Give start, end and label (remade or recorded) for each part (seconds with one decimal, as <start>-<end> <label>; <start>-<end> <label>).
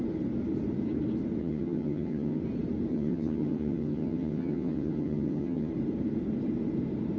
0.0-1.4 recorded; 1.4-2.4 remade; 2.4-2.9 recorded; 2.9-5.7 remade; 5.7-7.2 recorded